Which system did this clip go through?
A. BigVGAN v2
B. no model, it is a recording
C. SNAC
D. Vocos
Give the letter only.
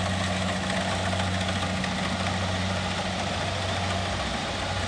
B